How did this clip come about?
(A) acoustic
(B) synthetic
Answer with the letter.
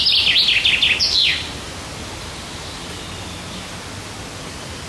A